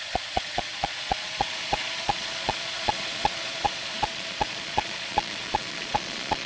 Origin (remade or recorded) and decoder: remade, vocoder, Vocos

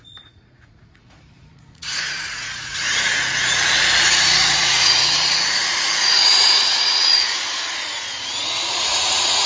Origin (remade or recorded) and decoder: remade, vocoder, Vocos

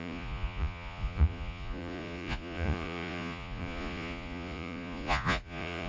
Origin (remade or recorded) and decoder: remade, vocoder, Vocos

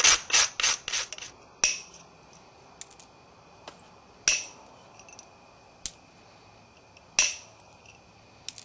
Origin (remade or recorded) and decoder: recorded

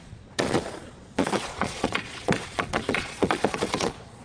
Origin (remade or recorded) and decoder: remade, vocoder, Vocos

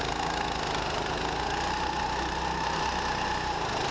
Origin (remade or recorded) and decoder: recorded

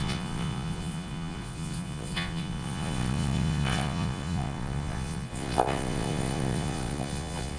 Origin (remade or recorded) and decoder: remade, vocoder, Vocos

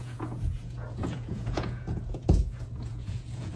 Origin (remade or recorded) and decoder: remade, vocoder, Vocos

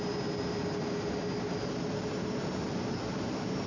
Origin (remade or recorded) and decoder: recorded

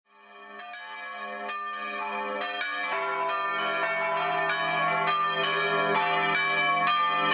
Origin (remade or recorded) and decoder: recorded